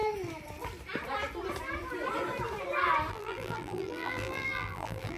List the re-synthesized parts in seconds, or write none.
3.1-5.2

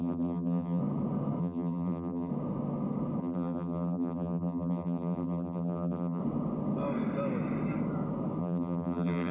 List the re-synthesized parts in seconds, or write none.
0.0-0.8; 1.4-2.3; 3.2-6.2; 8.4-9.3

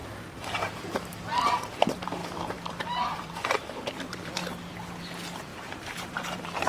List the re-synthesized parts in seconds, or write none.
0.0-1.6; 2.2-4.3; 5.5-6.7

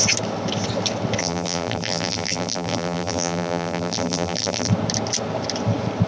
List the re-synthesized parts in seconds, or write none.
1.2-4.7